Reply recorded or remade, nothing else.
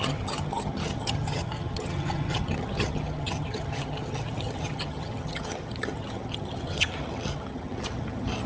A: remade